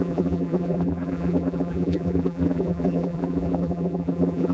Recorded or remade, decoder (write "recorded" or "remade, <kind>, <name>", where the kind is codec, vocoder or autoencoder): remade, vocoder, BigVGAN v2